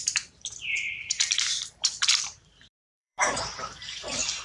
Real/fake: fake